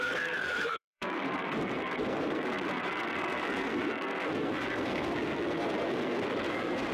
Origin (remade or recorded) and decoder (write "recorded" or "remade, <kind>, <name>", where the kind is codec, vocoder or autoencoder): remade, codec, SNAC